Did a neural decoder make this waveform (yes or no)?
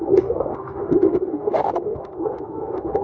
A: yes